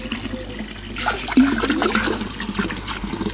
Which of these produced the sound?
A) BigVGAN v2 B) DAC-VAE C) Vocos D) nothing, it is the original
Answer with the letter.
D